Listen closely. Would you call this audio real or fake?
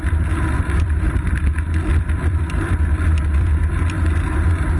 fake